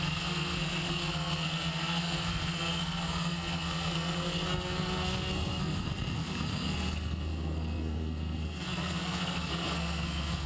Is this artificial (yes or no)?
yes